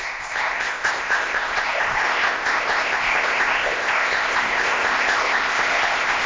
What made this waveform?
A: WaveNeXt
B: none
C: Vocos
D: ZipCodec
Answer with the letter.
D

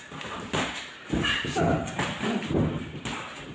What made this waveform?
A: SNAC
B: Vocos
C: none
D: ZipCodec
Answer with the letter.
C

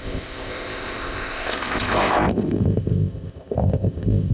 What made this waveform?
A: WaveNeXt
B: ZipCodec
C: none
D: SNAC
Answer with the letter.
B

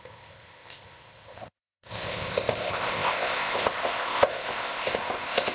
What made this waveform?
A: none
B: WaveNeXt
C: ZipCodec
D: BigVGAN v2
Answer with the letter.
C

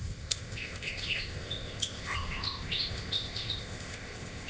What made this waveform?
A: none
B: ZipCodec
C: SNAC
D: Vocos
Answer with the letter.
B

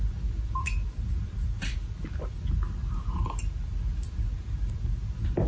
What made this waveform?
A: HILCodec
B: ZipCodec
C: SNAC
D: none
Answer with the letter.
D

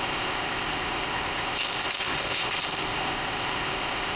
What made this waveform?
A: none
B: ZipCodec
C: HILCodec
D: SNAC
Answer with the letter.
B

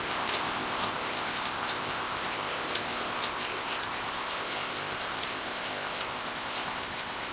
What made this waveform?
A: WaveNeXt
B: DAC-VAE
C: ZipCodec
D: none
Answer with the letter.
C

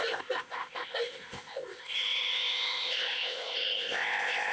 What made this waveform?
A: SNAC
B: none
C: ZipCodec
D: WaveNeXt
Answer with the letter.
C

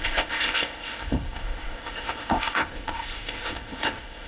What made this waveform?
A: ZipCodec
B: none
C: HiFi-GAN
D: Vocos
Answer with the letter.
A